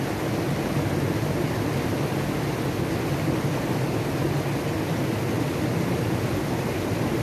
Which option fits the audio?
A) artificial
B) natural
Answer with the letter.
B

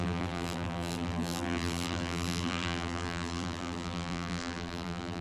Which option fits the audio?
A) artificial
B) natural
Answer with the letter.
A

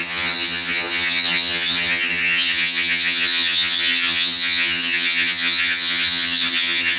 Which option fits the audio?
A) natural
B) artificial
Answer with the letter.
B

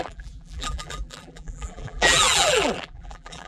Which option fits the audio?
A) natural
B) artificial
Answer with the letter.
B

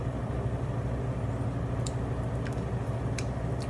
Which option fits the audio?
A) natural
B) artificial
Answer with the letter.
A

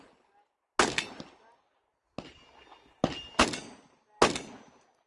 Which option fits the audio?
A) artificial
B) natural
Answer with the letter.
B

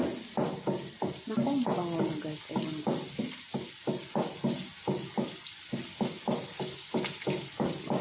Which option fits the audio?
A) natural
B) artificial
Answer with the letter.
A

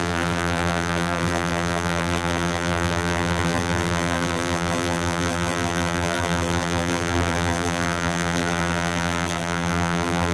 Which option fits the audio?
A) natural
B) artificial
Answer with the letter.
B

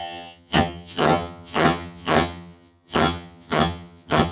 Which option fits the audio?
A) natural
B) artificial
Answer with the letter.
B